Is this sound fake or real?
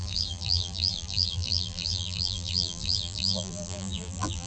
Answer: fake